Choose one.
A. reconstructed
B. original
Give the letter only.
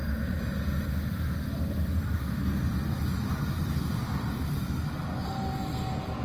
B